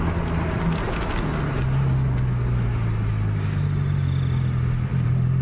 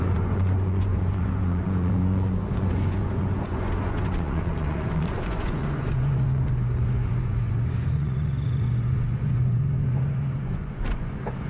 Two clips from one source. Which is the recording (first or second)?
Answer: first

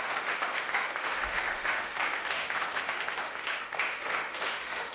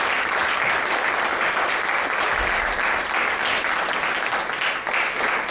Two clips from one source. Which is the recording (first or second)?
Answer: second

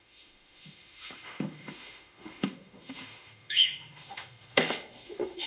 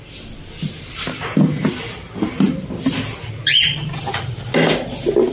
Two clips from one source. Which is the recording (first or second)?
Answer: second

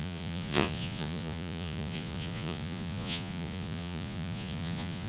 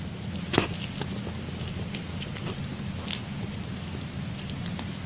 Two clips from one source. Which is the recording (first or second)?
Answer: second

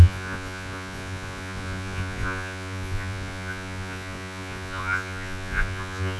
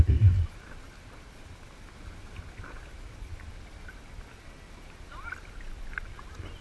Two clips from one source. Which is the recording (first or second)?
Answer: second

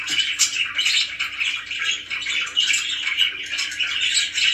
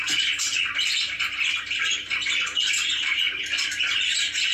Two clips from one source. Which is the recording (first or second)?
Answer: first